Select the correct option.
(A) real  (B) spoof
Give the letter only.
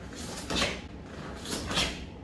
A